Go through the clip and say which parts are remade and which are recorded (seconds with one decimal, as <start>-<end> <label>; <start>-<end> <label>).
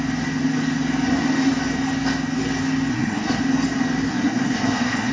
0.0-2.9 recorded; 2.9-3.4 remade; 3.4-4.1 recorded; 4.1-5.1 remade